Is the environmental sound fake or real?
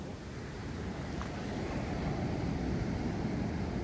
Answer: real